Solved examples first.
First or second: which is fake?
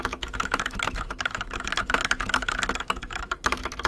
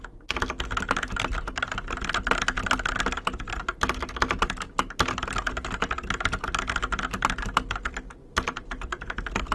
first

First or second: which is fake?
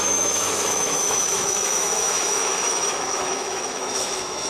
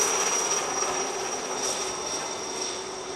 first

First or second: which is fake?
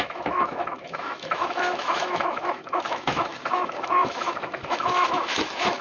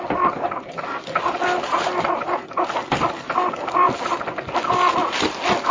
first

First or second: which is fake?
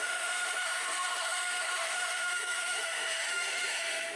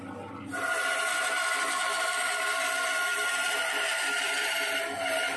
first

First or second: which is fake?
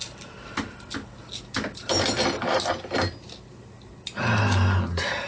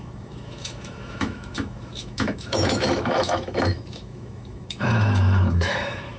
second